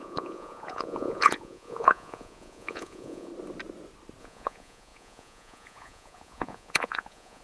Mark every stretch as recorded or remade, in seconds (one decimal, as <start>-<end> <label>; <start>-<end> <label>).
0.0-3.3 remade; 3.3-4.2 recorded; 4.2-7.4 remade